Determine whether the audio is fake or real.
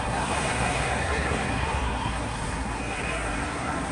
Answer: fake